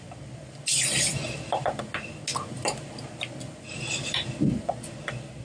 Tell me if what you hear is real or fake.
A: real